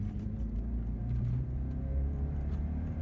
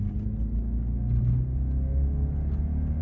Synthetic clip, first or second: first